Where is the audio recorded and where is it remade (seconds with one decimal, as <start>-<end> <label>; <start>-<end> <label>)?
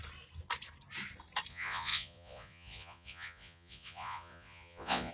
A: 0.0-1.5 recorded; 1.5-5.1 remade